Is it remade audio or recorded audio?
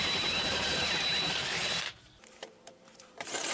remade